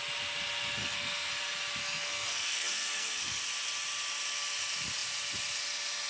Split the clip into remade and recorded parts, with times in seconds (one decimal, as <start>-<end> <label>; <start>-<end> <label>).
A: 0.0-0.8 recorded; 0.8-1.3 remade; 1.3-1.8 recorded; 1.8-3.4 remade; 3.4-6.1 recorded